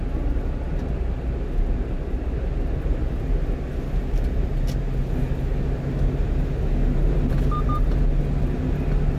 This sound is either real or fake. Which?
real